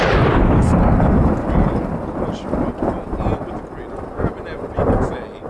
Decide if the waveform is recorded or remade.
recorded